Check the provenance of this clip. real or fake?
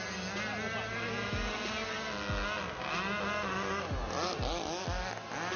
real